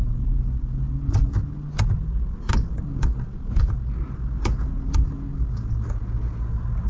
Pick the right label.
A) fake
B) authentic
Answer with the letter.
B